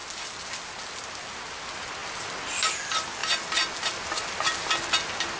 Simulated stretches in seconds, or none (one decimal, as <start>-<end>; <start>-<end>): none